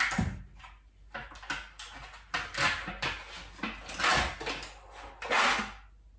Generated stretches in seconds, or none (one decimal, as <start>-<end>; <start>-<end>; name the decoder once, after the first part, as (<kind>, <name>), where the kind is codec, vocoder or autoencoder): none

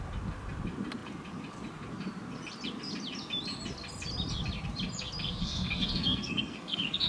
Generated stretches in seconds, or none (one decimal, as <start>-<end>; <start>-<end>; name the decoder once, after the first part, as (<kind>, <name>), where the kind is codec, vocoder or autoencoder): 5.4-7.1 (codec, SNAC)

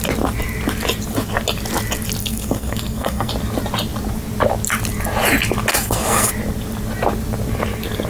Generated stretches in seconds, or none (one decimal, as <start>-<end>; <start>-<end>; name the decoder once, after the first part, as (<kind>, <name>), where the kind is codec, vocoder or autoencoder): 2.2-3.3 (codec, SNAC); 5.7-6.3